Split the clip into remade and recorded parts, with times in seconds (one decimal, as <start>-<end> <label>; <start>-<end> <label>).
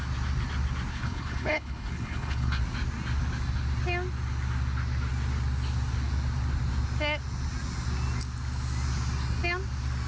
0.0-0.9 recorded; 0.9-2.6 remade; 2.6-10.1 recorded